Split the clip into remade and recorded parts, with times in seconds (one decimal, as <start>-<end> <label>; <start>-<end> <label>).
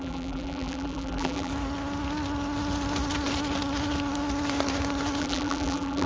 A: 0.0-1.5 remade; 1.5-5.2 recorded; 5.2-6.1 remade